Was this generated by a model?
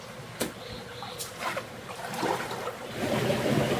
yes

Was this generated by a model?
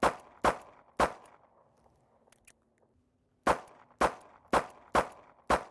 no